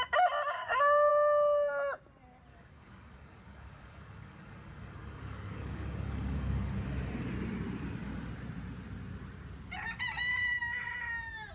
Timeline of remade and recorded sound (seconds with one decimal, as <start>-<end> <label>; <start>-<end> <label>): 0.0-0.6 recorded; 0.6-1.1 remade; 1.1-2.5 recorded; 2.5-6.7 remade; 6.7-11.5 recorded